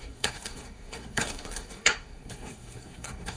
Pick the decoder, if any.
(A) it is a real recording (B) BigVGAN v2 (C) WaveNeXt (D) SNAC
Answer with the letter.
D